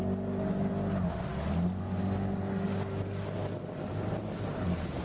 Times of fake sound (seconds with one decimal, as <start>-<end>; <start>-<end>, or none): none